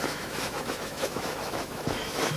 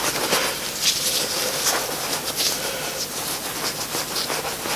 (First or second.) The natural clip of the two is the second